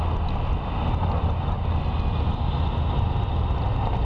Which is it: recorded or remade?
recorded